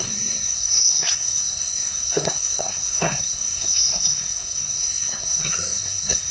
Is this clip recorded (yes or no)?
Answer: no